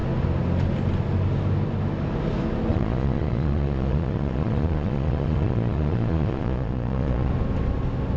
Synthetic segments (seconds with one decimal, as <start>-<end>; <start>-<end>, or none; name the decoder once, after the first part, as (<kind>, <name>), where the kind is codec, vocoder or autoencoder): 2.7-7.3 (vocoder, Vocos)